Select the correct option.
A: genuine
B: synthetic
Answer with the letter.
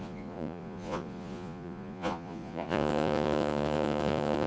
B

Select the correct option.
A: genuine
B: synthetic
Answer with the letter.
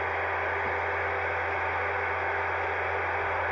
A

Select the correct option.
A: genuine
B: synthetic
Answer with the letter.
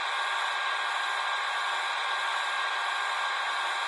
B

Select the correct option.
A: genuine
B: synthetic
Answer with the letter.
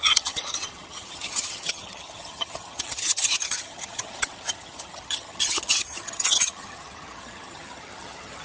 B